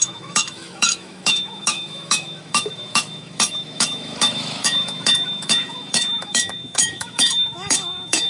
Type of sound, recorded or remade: remade